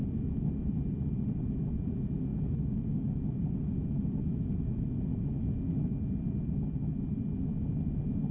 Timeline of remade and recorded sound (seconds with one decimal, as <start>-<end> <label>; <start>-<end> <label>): 0.0-8.3 recorded